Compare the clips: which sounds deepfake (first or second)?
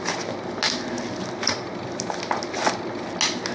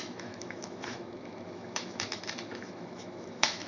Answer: second